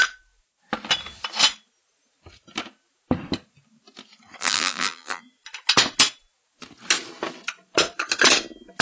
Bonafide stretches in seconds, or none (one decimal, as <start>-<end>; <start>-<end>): 0.0-4.4; 5.2-8.8